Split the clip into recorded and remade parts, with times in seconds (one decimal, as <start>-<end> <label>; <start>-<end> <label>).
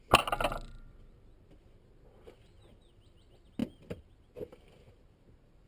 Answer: 0.0-5.7 recorded